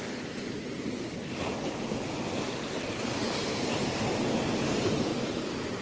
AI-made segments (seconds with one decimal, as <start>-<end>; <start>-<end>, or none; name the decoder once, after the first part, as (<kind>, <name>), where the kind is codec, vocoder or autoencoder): 5.1-5.8 (vocoder, BigVGAN v2)